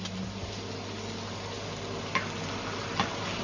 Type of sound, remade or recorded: recorded